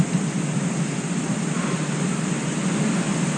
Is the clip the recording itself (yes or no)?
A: yes